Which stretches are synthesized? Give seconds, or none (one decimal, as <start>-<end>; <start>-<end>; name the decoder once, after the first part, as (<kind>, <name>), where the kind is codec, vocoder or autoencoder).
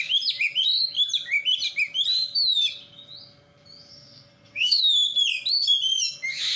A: 3.9-4.8 (codec, SNAC)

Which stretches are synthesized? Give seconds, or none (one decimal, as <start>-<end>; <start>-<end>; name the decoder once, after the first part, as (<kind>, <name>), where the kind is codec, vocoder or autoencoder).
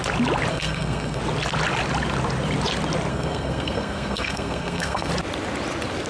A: 0.5-1.2 (codec, SNAC); 3.1-5.1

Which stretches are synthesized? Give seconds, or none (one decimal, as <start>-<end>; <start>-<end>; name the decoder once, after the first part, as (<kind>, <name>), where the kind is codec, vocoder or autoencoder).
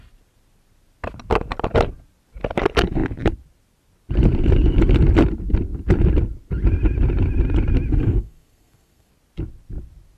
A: 7.9-9.1 (codec, SNAC)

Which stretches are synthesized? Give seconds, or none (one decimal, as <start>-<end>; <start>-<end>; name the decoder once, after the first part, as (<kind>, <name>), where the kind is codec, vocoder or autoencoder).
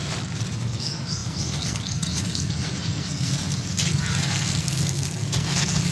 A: 0.5-5.9 (codec, SNAC)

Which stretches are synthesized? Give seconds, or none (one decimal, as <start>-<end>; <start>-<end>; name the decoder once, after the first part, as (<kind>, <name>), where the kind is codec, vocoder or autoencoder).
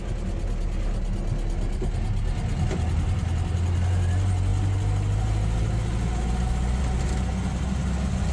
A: none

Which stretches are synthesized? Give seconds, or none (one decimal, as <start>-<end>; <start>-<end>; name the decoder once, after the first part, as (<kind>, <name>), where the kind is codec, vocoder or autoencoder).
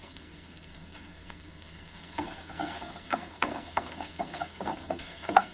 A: 0.0-5.5 (codec, SNAC)